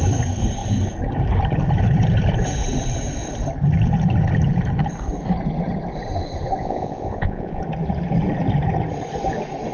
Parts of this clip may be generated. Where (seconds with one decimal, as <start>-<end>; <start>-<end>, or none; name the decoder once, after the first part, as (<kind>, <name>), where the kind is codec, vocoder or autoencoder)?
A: 6.6-7.6 (vocoder, Vocos)